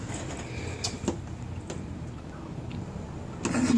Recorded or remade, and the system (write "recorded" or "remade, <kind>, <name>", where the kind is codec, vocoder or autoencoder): recorded